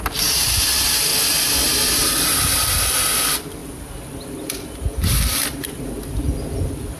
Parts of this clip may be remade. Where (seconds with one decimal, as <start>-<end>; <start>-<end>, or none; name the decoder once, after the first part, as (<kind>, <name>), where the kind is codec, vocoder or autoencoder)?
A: none